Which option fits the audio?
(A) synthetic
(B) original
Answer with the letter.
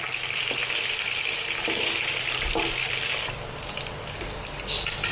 B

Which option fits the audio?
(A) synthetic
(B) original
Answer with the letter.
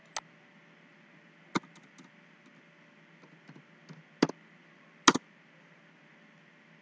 B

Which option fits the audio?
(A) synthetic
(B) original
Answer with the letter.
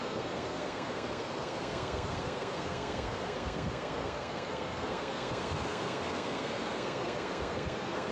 A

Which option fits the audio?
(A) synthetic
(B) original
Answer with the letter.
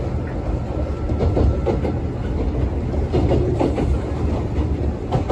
B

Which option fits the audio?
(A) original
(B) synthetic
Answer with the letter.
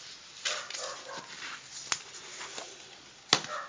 A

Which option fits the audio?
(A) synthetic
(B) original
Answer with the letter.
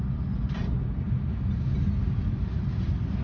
B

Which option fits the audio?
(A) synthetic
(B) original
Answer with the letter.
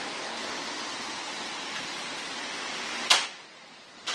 B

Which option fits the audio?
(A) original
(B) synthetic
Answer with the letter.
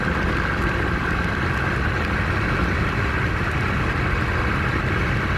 A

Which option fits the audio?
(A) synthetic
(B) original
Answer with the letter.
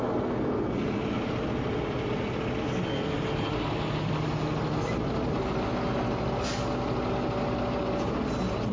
B